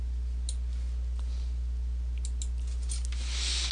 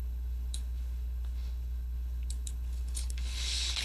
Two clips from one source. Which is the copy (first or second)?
second